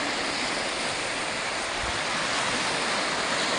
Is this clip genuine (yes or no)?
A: yes